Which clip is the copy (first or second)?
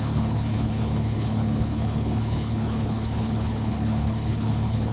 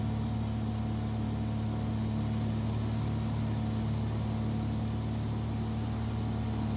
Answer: first